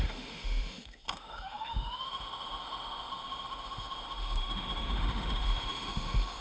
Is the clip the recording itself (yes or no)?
no